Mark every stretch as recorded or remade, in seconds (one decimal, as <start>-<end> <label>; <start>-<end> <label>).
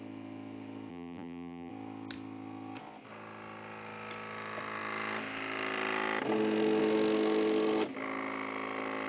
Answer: 0.0-0.9 recorded; 0.9-1.7 remade; 1.7-9.1 recorded